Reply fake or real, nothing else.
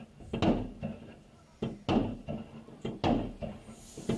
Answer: real